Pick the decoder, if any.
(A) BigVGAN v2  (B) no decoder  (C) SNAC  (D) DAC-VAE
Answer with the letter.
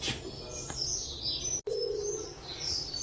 B